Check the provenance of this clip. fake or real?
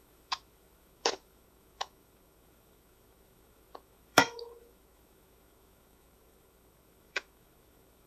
fake